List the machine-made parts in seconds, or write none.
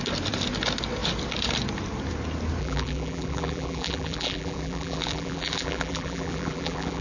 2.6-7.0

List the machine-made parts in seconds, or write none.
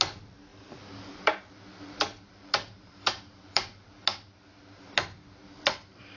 0.5-1.1; 2.1-3.6